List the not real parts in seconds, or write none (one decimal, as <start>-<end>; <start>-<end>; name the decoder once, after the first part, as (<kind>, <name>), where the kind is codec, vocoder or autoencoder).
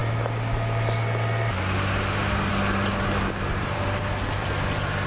2.5-2.9 (vocoder, BigVGAN v2); 3.4-5.1